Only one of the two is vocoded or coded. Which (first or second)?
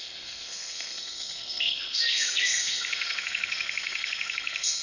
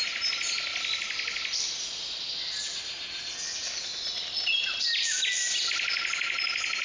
first